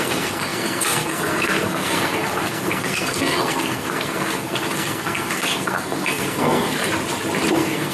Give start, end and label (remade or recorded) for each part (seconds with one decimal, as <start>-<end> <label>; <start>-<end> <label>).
0.0-6.8 remade; 6.8-7.5 recorded; 7.5-7.9 remade